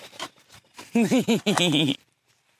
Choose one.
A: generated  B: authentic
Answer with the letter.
A